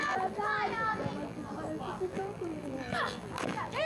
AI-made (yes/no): yes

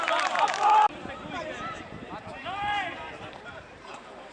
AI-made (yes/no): yes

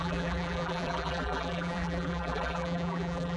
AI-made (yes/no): yes